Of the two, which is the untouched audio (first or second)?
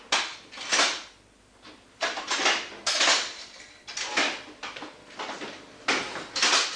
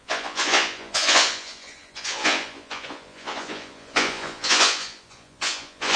first